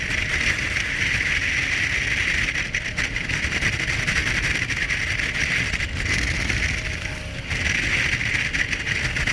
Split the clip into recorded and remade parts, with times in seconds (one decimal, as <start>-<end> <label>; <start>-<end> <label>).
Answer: 0.0-9.3 recorded

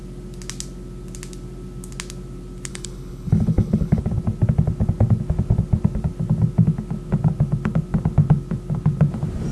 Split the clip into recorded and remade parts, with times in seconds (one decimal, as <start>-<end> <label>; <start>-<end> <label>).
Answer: 0.0-2.7 recorded; 2.7-4.0 remade; 4.0-9.5 recorded

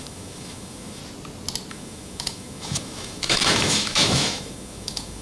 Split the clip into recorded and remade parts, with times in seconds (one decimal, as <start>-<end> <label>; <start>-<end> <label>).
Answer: 0.0-1.0 remade; 1.0-1.7 recorded; 1.7-5.2 remade